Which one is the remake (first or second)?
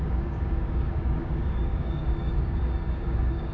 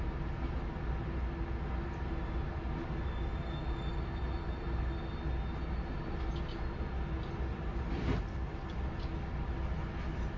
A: first